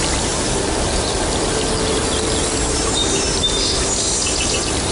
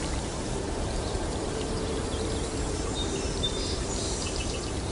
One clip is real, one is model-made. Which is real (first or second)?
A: first